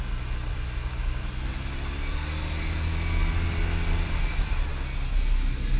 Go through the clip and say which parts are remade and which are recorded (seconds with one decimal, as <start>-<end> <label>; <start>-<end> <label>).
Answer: 0.0-5.8 recorded